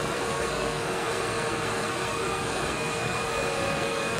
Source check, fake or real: fake